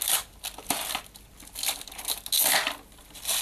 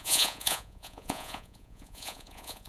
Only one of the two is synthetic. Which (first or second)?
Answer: second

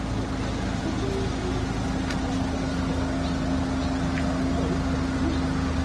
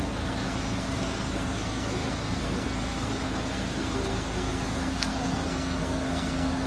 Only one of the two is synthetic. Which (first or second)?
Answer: second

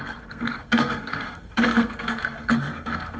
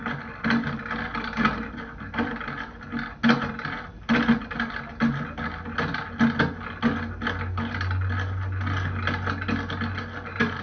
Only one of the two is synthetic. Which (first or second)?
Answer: first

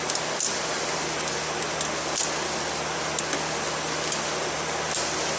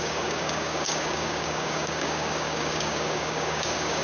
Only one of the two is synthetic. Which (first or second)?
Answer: second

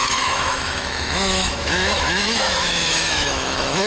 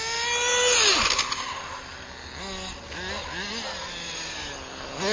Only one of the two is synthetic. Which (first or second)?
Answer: first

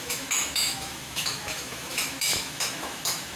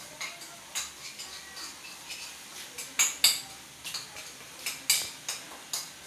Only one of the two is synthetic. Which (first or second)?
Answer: first